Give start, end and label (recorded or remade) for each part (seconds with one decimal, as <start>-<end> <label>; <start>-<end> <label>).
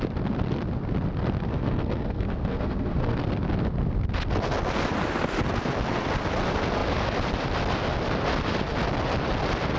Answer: 0.0-1.5 recorded; 1.5-3.2 remade; 3.2-9.8 recorded